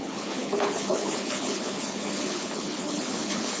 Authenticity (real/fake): fake